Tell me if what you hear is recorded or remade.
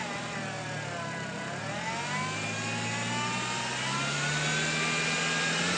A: recorded